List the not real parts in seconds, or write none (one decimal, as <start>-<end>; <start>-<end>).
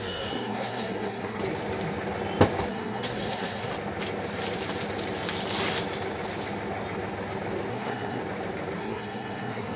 0.0-1.4; 2.7-3.7; 7.7-8.2; 8.8-9.8